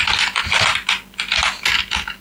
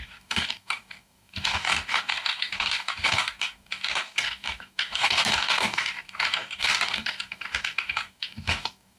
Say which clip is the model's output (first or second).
second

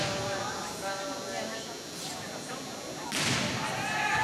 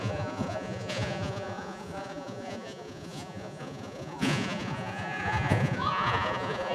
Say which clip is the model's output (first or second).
second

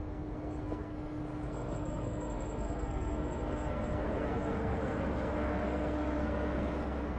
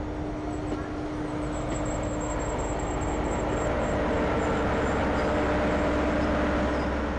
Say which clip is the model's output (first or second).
first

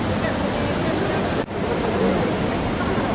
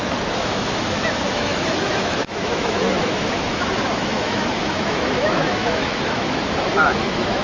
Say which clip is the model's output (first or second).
second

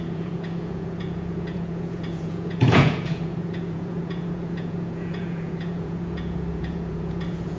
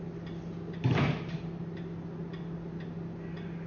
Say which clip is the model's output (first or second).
first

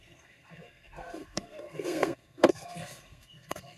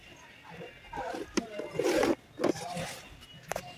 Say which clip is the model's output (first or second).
first